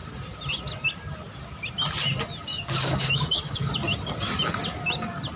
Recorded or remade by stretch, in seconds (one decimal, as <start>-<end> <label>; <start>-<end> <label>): 0.0-2.5 recorded; 2.5-3.7 remade; 3.7-5.4 recorded